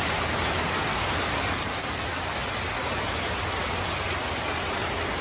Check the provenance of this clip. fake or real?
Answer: real